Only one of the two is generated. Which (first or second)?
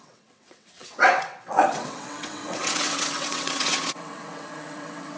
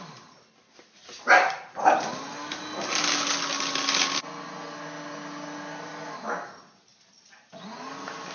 first